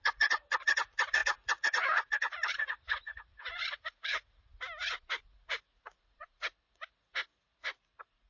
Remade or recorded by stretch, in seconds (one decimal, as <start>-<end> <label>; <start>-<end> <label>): 0.0-4.5 remade; 4.5-5.3 recorded; 5.3-8.3 remade

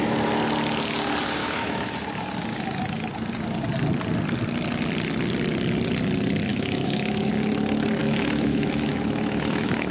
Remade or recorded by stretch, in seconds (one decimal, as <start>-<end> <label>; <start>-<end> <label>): 0.0-1.4 recorded; 1.4-1.9 remade; 1.9-6.5 recorded; 6.5-7.3 remade; 7.3-8.0 recorded; 8.0-9.9 remade

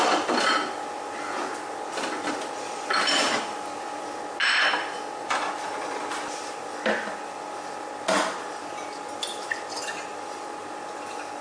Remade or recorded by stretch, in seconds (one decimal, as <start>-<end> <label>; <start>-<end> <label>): 0.0-11.4 recorded